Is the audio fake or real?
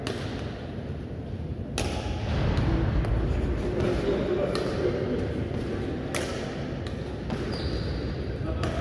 real